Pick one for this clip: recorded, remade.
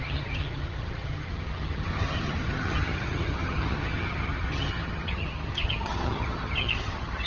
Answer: remade